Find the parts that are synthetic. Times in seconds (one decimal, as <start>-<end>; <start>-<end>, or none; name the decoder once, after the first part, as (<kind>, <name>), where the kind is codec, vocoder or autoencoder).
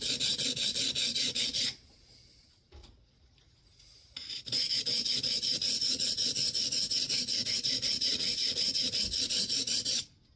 2.8-4.8 (vocoder, Vocos); 5.5-9.8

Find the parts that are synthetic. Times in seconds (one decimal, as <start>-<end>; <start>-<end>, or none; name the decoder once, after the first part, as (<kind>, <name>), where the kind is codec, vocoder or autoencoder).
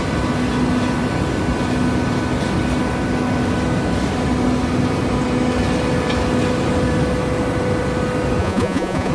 8.4-9.1 (vocoder, Vocos)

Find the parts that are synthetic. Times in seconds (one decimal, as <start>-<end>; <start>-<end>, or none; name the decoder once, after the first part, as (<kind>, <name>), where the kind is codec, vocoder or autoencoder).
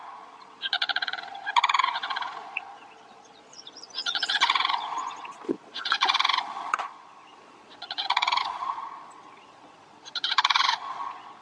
0.0-11.4 (vocoder, Vocos)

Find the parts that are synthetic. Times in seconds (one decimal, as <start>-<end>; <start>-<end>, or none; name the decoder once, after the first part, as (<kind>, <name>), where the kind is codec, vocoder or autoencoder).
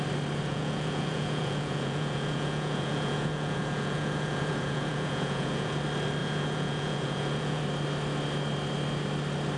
0.5-5.7 (vocoder, Vocos); 6.2-7.6